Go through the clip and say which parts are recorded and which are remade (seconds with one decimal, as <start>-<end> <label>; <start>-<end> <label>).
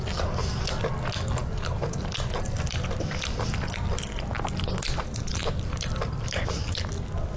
0.0-7.4 recorded